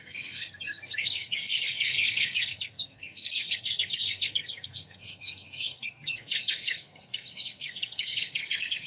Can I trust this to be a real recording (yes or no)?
no